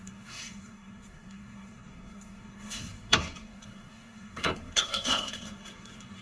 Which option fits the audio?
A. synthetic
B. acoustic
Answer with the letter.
A